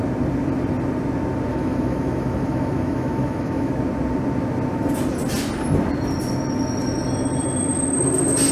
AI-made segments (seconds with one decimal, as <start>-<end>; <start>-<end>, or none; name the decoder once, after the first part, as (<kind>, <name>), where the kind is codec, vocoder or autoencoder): 1.5-3.7 (autoencoder, DAC-VAE)